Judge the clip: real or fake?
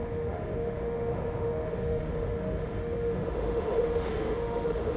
fake